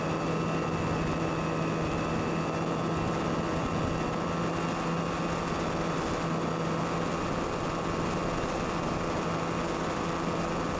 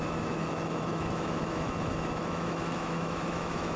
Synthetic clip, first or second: second